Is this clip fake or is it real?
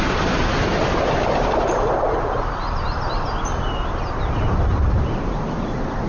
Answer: real